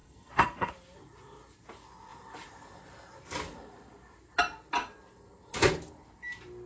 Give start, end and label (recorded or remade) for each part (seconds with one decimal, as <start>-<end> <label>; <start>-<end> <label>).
0.0-0.7 remade; 0.7-6.7 recorded